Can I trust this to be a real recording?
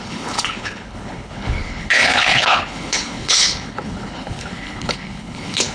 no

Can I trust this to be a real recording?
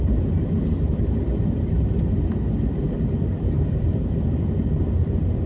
no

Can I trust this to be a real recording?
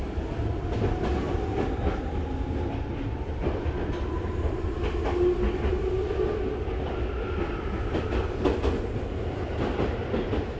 yes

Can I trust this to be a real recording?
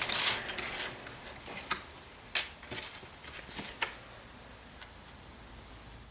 yes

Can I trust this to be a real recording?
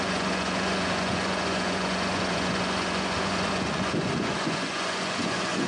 no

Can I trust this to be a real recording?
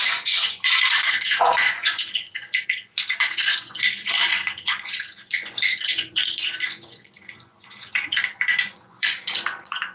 no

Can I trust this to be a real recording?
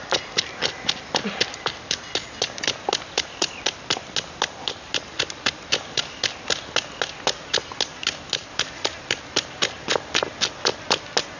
yes